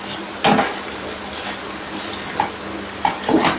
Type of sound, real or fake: real